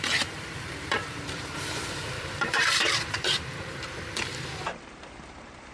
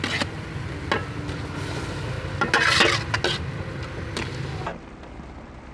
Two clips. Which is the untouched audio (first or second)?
second